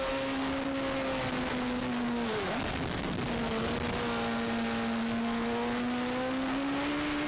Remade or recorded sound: recorded